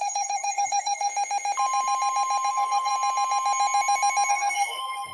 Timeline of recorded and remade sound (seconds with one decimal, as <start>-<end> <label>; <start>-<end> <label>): 0.0-1.1 remade; 1.1-2.5 recorded; 2.5-2.9 remade; 2.9-4.3 recorded; 4.3-5.1 remade